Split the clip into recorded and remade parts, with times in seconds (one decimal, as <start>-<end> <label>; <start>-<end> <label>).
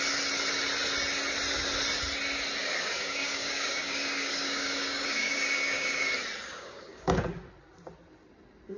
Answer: 0.0-2.6 recorded; 2.6-6.1 remade; 6.1-6.5 recorded; 6.5-7.2 remade; 7.2-8.8 recorded